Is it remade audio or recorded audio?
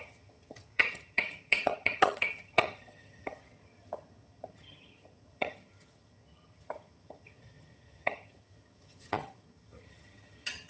remade